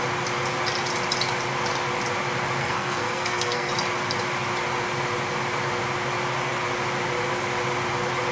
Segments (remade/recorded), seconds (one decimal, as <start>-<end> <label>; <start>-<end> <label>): 0.0-2.6 recorded; 2.6-3.7 remade; 3.7-8.3 recorded